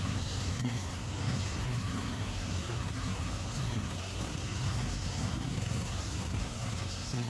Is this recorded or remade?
remade